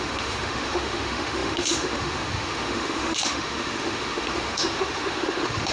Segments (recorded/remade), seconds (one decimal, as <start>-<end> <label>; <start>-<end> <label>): 0.0-5.7 remade